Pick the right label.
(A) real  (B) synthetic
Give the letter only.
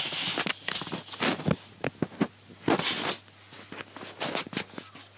A